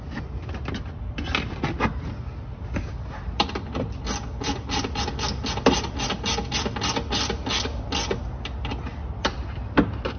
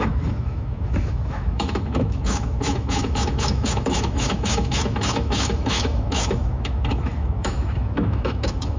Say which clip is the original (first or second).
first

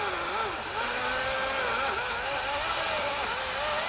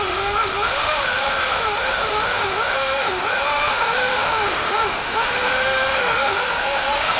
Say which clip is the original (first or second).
first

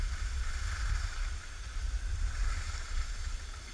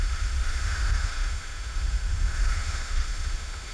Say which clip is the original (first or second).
first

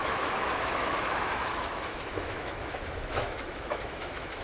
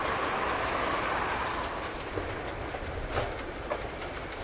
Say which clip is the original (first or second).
second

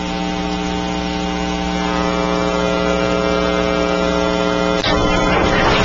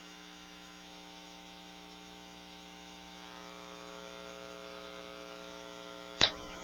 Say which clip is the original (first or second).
first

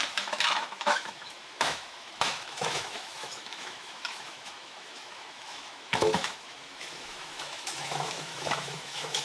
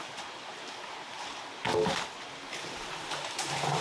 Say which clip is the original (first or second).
second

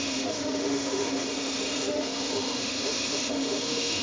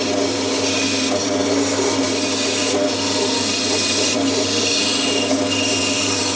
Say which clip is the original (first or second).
second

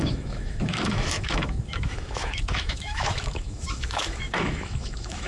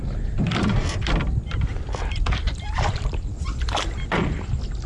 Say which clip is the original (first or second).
second